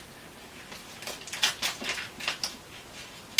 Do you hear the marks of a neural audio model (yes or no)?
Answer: no